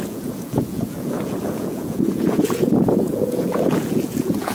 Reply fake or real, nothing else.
fake